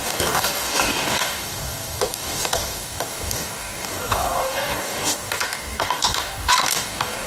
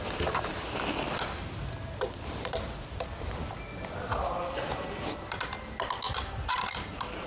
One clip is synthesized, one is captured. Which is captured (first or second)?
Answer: second